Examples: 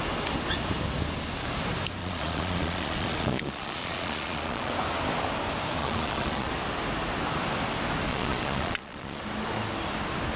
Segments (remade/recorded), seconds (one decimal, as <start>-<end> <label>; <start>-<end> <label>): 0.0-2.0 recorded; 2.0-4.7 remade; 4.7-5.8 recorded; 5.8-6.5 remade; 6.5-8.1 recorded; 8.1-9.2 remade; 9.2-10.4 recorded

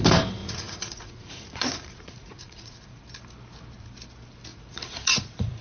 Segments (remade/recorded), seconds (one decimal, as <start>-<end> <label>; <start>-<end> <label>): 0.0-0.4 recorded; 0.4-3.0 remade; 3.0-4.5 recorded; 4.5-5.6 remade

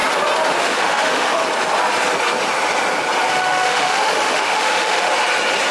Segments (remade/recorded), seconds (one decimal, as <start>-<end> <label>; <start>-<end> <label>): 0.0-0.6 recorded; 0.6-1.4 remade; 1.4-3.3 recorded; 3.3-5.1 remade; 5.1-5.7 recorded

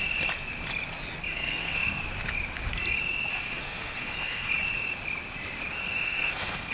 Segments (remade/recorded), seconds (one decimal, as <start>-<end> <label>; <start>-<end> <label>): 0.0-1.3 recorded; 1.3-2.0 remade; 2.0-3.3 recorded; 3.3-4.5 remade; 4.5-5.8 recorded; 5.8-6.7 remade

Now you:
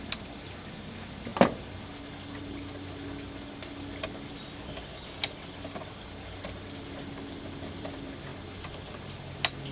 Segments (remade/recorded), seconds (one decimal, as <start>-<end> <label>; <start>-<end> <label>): 0.0-1.3 remade; 1.3-4.3 recorded; 4.3-8.3 remade; 8.3-9.0 recorded; 9.0-9.7 remade